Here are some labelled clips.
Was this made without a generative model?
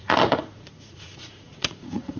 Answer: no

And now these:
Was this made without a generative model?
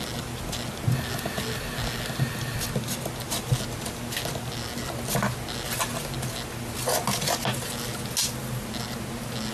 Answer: yes